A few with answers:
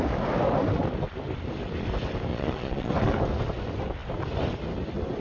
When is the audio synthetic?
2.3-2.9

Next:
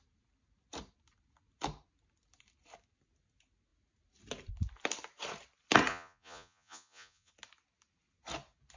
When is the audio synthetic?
5.9-7.3

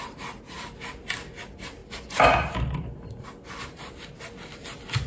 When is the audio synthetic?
none

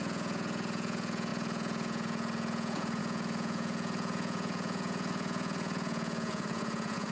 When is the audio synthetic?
0.0-7.1

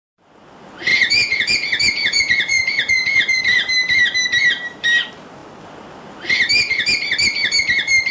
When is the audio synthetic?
0.9-3.4

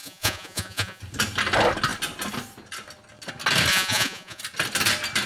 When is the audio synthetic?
0.0-1.0; 3.7-4.4

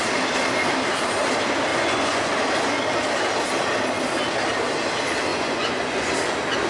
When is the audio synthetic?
1.7-2.3; 5.3-6.1